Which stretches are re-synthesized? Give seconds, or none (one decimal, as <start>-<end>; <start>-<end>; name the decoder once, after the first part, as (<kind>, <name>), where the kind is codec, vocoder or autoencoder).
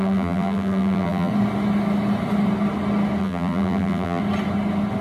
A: 0.0-1.3 (vocoder, BigVGAN v2); 3.2-4.2